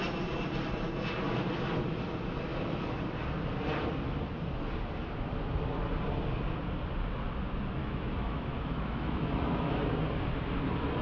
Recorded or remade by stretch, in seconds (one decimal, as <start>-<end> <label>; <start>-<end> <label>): 0.0-2.5 recorded; 2.5-3.0 remade; 3.0-7.8 recorded; 7.8-9.8 remade; 9.8-11.0 recorded